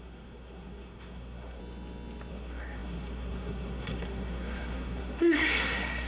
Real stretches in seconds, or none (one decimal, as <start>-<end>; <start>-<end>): 1.6-2.3